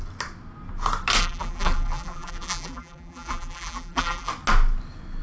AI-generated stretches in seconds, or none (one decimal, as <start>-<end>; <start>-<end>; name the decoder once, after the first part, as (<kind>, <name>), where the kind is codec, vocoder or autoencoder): 1.2-4.3 (vocoder, BigVGAN v2)